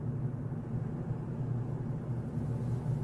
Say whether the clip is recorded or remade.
recorded